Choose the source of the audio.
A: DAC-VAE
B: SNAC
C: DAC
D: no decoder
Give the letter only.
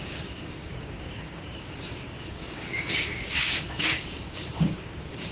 C